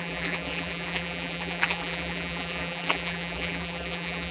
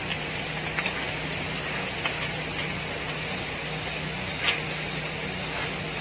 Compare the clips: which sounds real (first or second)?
second